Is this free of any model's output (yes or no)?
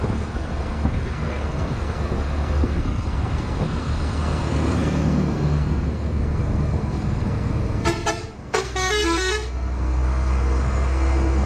no